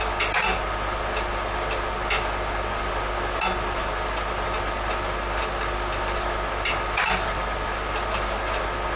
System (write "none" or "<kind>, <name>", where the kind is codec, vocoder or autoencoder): none